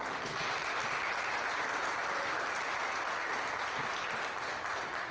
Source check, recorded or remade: recorded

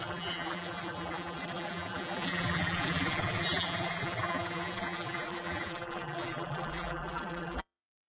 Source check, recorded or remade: remade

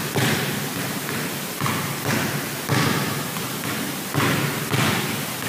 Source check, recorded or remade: recorded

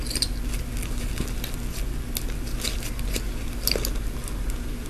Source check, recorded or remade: recorded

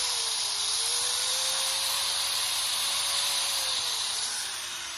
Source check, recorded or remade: remade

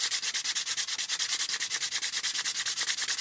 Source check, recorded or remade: recorded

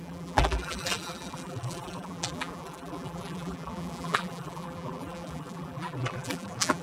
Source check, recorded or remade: remade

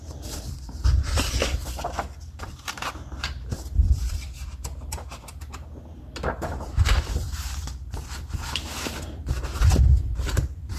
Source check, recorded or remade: remade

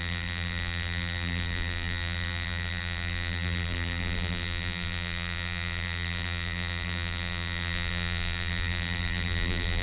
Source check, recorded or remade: remade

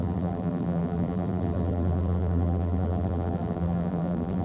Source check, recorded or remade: remade